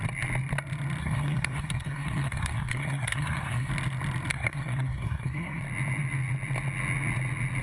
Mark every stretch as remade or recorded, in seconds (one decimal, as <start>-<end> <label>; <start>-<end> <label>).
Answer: 0.0-1.0 recorded; 1.0-3.7 remade; 3.7-4.3 recorded; 4.3-5.6 remade; 5.6-7.6 recorded